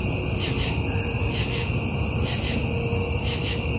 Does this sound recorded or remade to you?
recorded